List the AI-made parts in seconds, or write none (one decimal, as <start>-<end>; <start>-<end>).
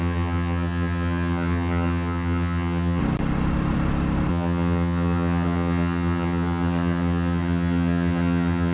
0.0-3.0; 4.3-8.7